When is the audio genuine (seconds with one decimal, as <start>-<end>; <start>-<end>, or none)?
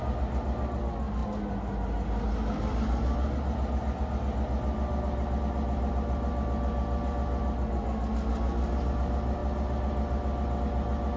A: 0.0-11.2